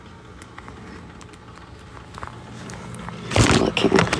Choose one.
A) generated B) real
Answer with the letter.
B